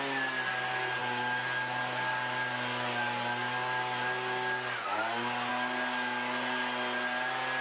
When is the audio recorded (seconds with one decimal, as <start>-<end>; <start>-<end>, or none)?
0.0-7.6